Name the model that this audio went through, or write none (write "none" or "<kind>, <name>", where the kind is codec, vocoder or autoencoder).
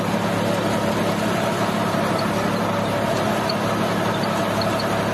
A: none